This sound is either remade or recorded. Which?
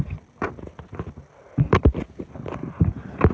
recorded